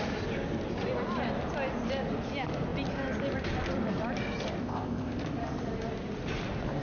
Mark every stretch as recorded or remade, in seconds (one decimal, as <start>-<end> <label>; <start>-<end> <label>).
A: 0.0-4.6 recorded; 4.6-5.2 remade; 5.2-6.8 recorded